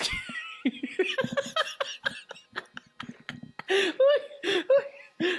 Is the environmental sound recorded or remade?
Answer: recorded